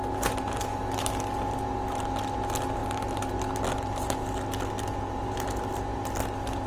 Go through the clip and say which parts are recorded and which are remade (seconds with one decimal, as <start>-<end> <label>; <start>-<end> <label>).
0.0-6.7 recorded

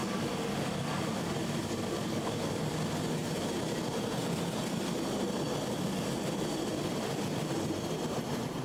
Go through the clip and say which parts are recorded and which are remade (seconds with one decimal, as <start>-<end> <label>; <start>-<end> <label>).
0.0-2.6 remade; 2.6-8.6 recorded

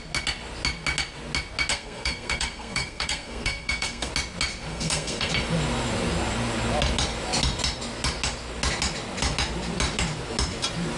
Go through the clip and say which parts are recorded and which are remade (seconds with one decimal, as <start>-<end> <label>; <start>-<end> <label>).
0.0-1.7 recorded; 1.7-4.1 remade; 4.1-4.7 recorded; 4.7-5.3 remade; 5.3-11.0 recorded

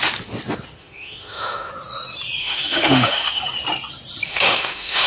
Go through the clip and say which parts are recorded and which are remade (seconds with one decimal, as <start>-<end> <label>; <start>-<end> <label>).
0.0-0.8 recorded; 0.8-1.7 remade; 1.7-2.4 recorded; 2.4-3.4 remade; 3.4-4.3 recorded; 4.3-5.1 remade

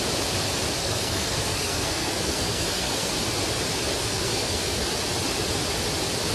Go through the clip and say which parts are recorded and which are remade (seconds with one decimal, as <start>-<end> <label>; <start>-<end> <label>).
0.0-0.8 recorded; 0.8-3.1 remade; 3.1-4.0 recorded; 4.0-4.8 remade; 4.8-6.3 recorded